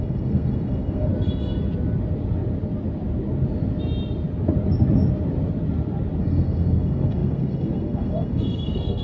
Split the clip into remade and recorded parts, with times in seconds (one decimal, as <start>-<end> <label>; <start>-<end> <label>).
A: 0.0-1.1 remade; 1.1-6.2 recorded; 6.2-9.0 remade